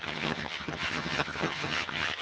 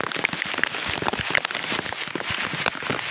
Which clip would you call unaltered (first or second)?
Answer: second